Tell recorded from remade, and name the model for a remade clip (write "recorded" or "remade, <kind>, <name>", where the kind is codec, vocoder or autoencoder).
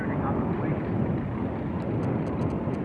recorded